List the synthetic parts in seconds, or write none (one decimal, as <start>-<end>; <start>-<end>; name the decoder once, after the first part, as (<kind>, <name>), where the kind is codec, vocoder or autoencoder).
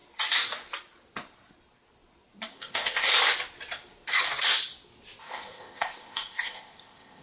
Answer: 2.5-3.1 (codec, ZipCodec); 5.2-7.2